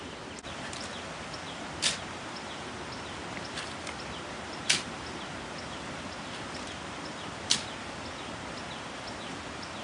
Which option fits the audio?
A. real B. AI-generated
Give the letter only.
A